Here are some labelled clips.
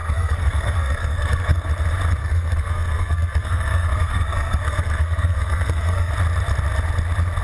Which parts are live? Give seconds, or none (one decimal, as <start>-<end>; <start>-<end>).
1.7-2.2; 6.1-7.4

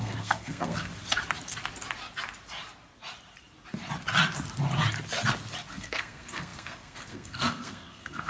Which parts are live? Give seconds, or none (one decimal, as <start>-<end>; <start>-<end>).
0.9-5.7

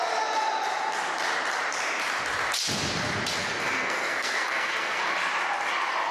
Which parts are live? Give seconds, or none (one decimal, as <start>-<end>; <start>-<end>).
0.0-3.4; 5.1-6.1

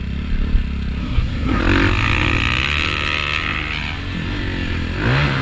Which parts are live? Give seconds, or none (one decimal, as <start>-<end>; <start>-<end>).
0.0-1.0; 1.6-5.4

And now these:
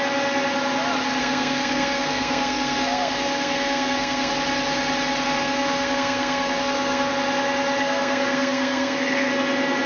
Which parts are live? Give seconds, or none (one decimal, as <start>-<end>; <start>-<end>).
0.0-1.2; 4.3-5.4; 7.1-7.8; 9.3-9.9

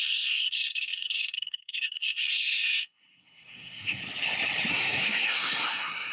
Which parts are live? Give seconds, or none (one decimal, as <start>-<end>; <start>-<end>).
4.0-4.7